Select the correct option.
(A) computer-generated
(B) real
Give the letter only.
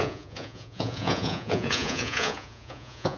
A